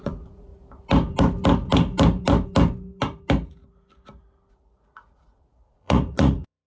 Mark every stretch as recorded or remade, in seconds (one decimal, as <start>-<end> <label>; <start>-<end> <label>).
0.0-0.5 remade; 0.5-4.5 recorded; 4.5-6.7 remade

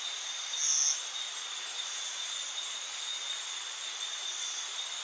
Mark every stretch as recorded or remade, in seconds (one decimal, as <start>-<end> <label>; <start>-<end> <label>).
0.0-5.0 recorded

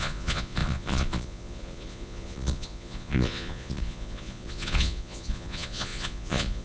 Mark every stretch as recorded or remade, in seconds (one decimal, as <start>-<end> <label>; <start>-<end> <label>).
0.0-6.6 remade

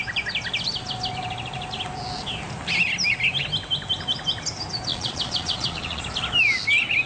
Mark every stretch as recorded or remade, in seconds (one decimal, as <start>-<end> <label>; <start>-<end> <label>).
0.0-4.9 recorded; 4.9-6.0 remade; 6.0-7.1 recorded

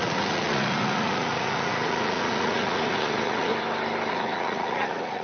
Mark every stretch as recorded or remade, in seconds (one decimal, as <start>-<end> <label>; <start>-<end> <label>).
0.0-3.5 remade; 3.5-4.1 recorded; 4.1-5.2 remade

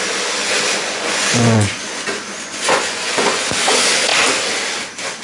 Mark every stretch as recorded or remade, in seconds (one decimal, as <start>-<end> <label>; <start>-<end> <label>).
0.0-0.4 recorded; 0.4-3.5 remade; 3.5-5.2 recorded

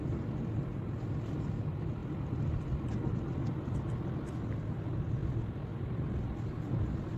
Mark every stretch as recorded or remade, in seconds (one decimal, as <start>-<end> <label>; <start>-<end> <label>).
0.0-7.2 recorded

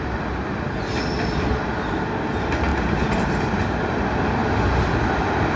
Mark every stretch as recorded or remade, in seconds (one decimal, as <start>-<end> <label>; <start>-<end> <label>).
0.0-5.6 recorded